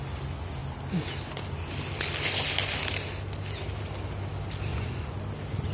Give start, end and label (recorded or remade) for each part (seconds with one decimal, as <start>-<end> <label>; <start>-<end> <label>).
0.0-4.7 recorded; 4.7-5.2 remade; 5.2-5.7 recorded